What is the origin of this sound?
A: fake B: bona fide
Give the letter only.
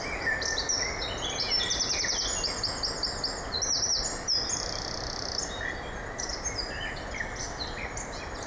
B